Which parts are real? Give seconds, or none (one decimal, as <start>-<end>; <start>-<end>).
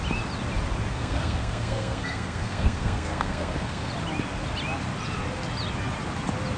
0.0-0.9; 3.9-6.6